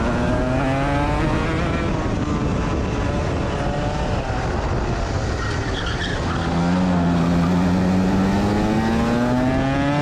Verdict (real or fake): real